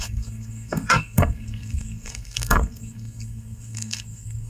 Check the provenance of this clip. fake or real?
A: fake